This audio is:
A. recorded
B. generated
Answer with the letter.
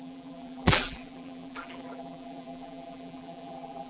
B